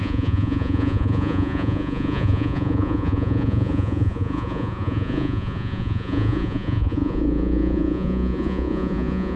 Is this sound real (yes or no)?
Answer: no